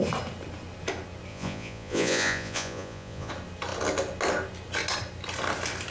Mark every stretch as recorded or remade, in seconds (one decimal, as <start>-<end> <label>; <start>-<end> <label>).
0.0-1.3 recorded; 1.3-3.3 remade; 3.3-5.9 recorded